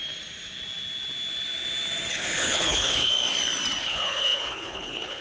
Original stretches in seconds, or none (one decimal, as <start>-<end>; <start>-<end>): 0.0-2.1; 3.1-3.8